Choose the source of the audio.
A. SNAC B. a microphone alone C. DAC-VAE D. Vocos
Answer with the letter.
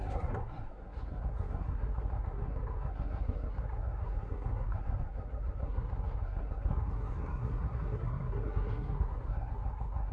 A